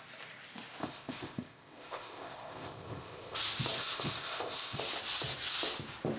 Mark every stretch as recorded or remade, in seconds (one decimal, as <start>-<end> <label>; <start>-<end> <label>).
0.0-0.8 recorded; 0.8-3.4 remade; 3.4-3.8 recorded; 3.8-4.8 remade; 4.8-6.2 recorded